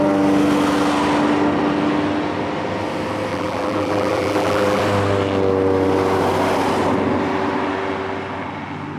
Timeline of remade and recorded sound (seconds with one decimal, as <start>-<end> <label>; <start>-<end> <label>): 0.0-3.3 recorded; 3.3-4.8 remade; 4.8-9.0 recorded